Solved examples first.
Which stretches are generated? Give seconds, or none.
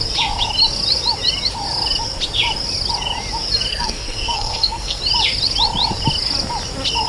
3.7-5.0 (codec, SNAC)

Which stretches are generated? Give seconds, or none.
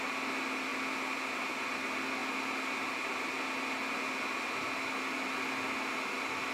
none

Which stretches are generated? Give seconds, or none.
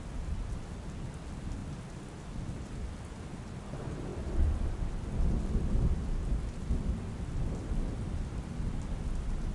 none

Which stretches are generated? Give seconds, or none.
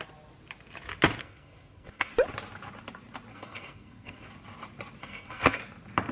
1.2-2.1 (codec, SNAC); 3.3-4.3; 5.0-5.6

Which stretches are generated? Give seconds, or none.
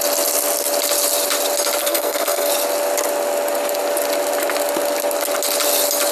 1.8-2.5 (codec, SNAC)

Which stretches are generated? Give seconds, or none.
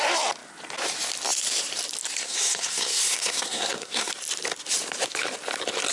2.2-4.1 (codec, SNAC)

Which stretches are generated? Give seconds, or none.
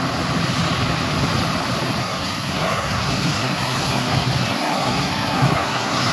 2.0-6.1 (codec, SNAC)